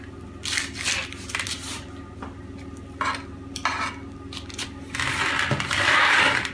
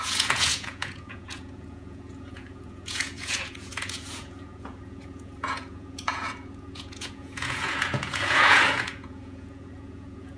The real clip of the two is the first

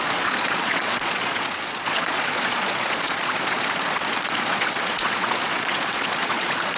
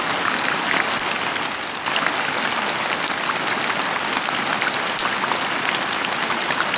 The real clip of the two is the second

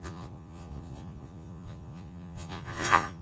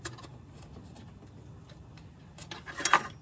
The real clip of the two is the second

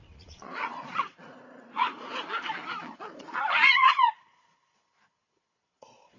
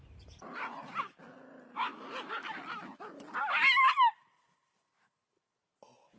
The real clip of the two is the second